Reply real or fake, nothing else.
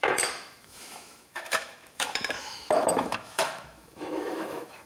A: fake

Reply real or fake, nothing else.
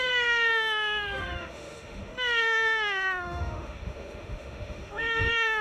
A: fake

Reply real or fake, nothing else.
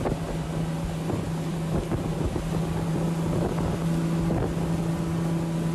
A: real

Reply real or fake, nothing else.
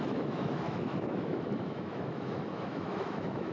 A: fake